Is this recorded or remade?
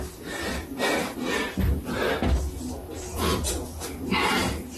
recorded